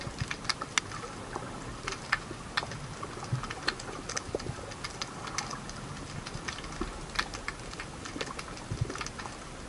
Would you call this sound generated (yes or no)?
no